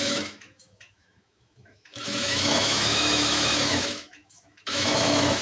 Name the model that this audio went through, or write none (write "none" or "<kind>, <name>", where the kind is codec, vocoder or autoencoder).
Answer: autoencoder, DAC-VAE